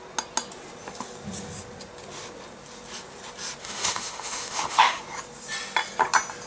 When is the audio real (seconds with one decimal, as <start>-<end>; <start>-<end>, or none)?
0.0-3.6; 5.0-6.5